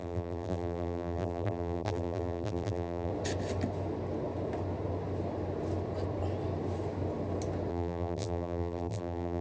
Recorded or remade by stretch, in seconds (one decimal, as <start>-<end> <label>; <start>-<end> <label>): 0.0-3.1 remade; 3.1-7.7 recorded; 7.7-9.4 remade